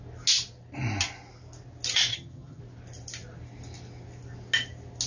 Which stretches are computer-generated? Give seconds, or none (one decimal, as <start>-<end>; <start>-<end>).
2.1-2.6